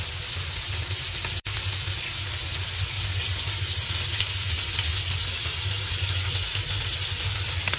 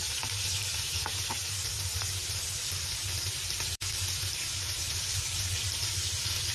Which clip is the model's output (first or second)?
second